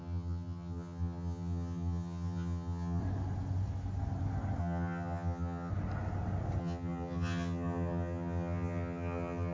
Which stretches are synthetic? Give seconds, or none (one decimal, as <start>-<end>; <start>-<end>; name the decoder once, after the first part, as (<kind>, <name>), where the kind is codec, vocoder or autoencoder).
0.0-3.0 (vocoder, HiFi-GAN); 4.6-5.7; 6.6-9.5